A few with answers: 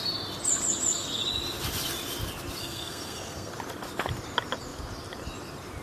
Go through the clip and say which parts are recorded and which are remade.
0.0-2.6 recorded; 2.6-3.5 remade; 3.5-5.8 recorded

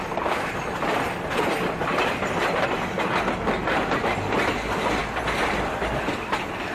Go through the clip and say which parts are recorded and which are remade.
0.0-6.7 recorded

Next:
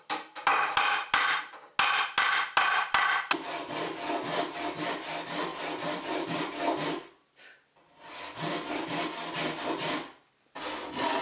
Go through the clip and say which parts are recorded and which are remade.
0.0-11.2 recorded

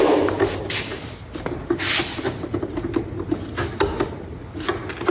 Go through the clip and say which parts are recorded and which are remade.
0.0-5.1 recorded

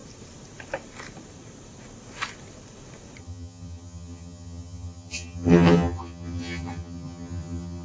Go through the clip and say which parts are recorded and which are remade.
0.0-3.2 recorded; 3.2-7.8 remade